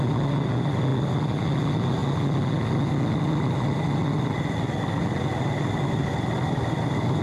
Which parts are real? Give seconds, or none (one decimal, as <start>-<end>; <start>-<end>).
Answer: 0.0-0.9; 1.4-6.0

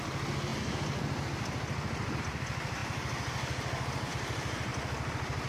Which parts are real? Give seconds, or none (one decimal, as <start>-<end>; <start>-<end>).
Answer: 0.0-4.7